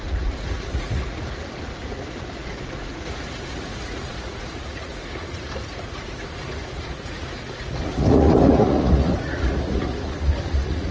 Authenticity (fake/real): fake